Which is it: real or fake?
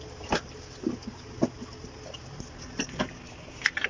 real